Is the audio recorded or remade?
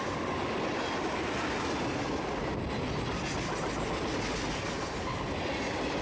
recorded